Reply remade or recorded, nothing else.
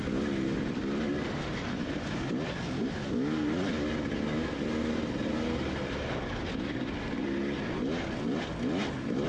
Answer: recorded